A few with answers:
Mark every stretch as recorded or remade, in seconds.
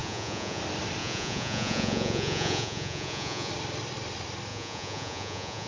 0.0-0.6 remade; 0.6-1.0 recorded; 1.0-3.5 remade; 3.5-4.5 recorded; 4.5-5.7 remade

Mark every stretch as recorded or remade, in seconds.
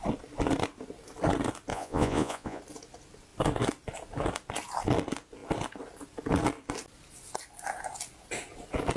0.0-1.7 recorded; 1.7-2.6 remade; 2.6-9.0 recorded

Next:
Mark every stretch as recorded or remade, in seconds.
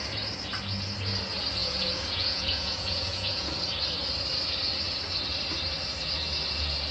0.0-1.6 recorded; 1.6-3.5 remade; 3.5-6.9 recorded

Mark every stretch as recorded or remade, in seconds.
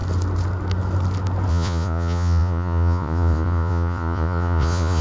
0.0-1.5 recorded; 1.5-5.0 remade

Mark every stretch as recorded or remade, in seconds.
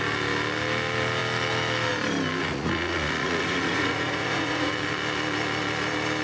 0.0-2.4 recorded; 2.4-4.7 remade; 4.7-6.2 recorded